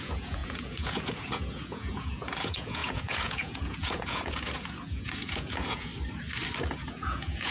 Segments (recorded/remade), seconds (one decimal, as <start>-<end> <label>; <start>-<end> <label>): 0.0-5.9 remade; 5.9-6.7 recorded; 6.7-7.5 remade